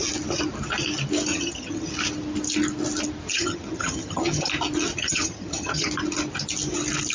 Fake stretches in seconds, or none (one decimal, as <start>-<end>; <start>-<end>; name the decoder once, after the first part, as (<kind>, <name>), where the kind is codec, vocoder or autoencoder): 1.3-1.9 (vocoder, HiFi-GAN); 3.3-4.5; 5.0-5.9